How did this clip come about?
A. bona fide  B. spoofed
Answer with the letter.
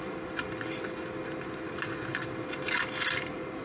A